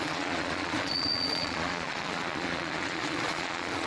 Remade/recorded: remade